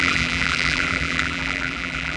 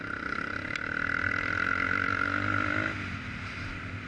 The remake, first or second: first